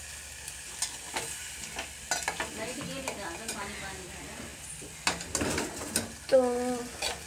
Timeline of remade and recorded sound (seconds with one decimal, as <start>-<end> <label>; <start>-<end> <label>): 0.0-7.3 recorded